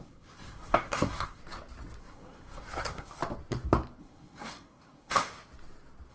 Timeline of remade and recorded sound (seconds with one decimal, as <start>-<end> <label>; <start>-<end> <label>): 0.0-1.4 remade; 1.4-2.0 recorded; 2.0-3.2 remade; 3.2-4.0 recorded; 4.0-5.3 remade; 5.3-6.1 recorded